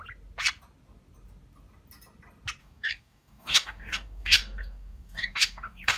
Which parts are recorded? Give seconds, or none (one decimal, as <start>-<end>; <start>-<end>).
0.0-2.6